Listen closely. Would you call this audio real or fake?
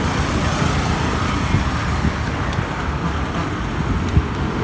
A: real